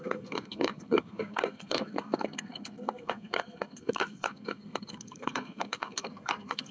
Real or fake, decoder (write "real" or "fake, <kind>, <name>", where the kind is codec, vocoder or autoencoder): fake, codec, SNAC